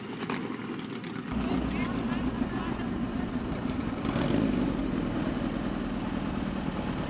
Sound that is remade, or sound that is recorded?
recorded